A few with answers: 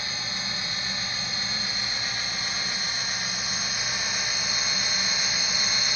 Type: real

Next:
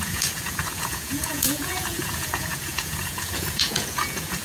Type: fake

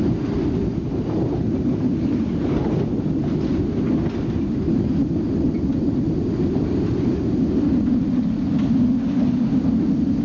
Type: real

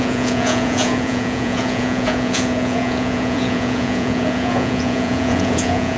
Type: fake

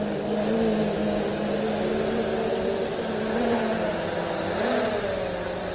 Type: real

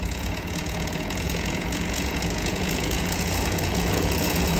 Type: fake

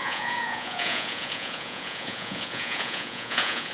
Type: fake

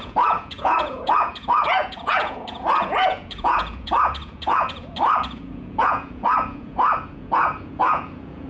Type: fake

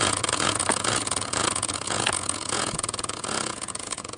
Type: fake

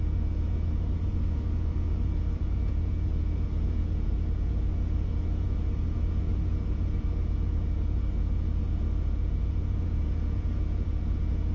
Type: fake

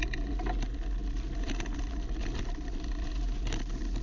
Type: real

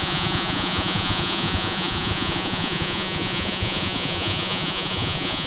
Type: fake